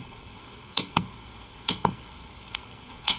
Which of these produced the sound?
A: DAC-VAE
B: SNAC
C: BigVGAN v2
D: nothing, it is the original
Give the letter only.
B